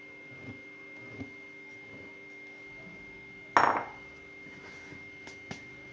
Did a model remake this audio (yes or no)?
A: no